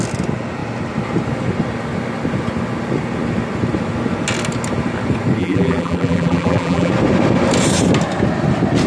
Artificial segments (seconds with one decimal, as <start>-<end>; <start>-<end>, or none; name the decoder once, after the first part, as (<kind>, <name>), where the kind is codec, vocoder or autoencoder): 5.4-6.9 (vocoder, BigVGAN v2)